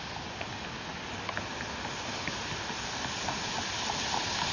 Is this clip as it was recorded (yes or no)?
yes